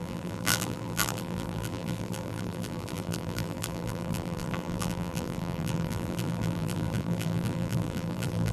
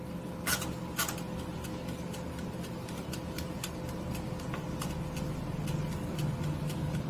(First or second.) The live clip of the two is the second